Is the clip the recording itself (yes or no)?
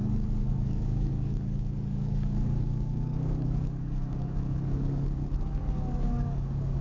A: no